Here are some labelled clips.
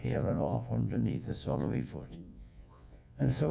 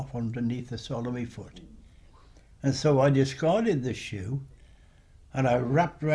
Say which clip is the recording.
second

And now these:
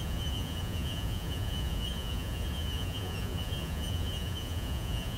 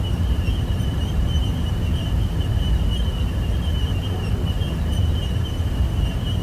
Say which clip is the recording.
second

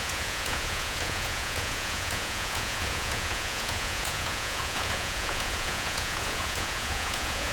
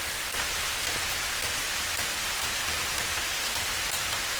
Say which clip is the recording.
second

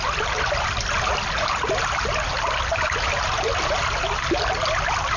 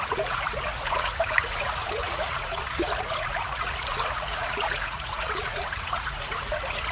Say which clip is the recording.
first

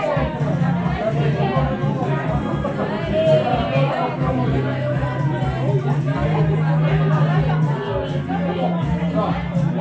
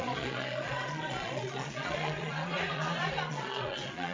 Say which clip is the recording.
first